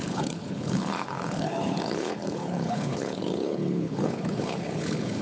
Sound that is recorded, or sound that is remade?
remade